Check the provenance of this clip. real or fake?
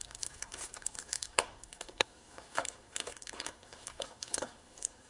fake